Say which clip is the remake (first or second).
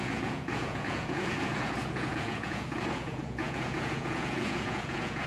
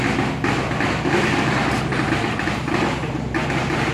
first